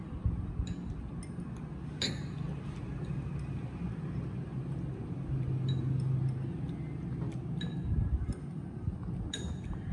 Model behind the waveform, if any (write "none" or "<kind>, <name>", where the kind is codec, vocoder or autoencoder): none